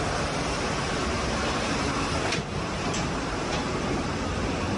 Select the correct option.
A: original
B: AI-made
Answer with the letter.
B